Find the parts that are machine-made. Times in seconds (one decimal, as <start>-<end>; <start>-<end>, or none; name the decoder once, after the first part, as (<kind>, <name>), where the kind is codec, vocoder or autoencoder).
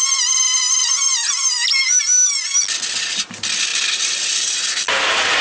0.0-5.4 (vocoder, BigVGAN v2)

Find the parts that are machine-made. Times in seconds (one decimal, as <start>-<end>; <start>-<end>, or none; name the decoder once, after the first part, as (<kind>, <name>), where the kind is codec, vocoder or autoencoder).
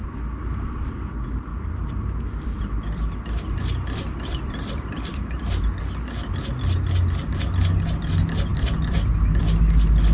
1.5-5.4 (vocoder, BigVGAN v2)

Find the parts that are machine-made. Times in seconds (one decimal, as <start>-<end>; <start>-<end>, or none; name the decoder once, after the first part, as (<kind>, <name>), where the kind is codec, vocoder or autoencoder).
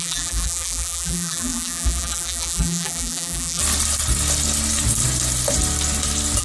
0.0-3.6 (vocoder, BigVGAN v2)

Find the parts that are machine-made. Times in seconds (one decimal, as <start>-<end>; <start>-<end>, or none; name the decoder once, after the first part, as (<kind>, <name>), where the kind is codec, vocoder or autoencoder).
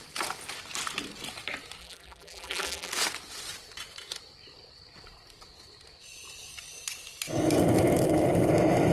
1.8-2.9 (vocoder, BigVGAN v2)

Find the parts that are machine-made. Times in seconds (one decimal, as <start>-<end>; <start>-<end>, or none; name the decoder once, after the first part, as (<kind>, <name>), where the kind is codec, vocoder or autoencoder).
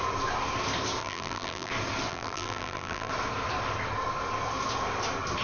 1.0-1.7 (vocoder, BigVGAN v2); 2.1-3.1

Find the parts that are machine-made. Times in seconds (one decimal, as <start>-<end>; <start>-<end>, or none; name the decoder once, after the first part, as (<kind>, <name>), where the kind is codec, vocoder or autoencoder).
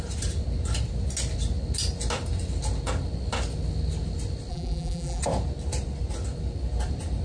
4.5-5.2 (vocoder, BigVGAN v2)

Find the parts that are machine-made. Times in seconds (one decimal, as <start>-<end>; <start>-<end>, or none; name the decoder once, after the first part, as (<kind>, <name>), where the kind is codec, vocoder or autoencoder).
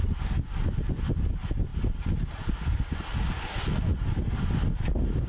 none